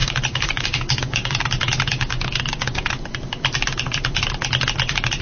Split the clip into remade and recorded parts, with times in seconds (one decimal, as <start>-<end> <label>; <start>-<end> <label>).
0.0-1.4 remade; 1.4-1.9 recorded; 1.9-2.9 remade; 2.9-5.2 recorded